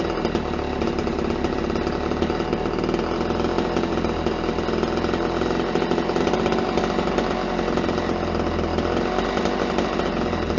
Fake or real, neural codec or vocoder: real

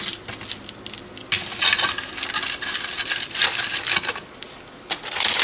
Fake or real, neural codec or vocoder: real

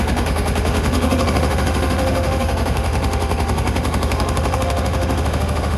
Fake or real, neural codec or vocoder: fake, autoencoder, DAC-VAE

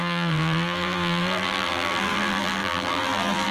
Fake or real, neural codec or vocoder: fake, vocoder, BigVGAN v2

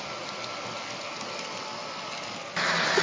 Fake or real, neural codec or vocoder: real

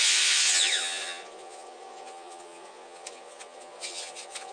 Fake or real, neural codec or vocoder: fake, vocoder, Vocos